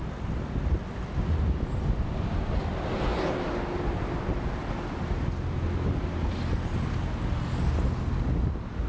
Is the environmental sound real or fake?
real